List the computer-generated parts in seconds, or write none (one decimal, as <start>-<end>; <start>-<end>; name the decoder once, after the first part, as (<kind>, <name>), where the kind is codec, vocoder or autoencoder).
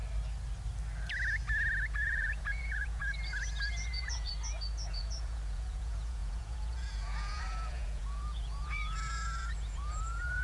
1.9-3.0 (vocoder, Vocos); 3.7-4.3; 4.9-10.4